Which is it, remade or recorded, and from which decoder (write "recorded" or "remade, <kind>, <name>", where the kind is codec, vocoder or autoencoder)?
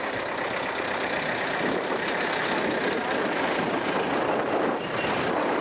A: recorded